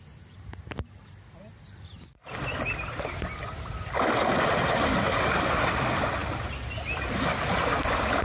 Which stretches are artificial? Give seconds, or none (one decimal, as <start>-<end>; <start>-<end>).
none